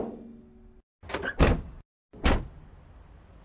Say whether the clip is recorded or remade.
recorded